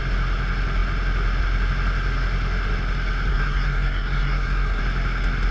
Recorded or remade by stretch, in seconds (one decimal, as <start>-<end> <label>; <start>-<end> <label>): 0.0-3.3 recorded; 3.3-4.8 remade; 4.8-5.5 recorded